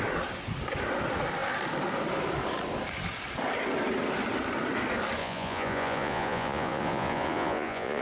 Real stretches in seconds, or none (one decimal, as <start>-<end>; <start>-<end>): 0.0-5.2